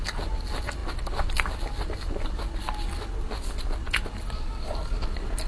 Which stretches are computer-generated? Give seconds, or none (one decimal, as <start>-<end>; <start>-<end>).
none